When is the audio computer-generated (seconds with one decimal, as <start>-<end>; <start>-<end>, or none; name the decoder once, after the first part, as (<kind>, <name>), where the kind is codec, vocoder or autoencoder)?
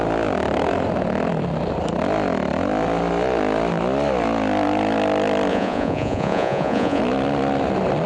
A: 5.5-7.0 (vocoder, Vocos)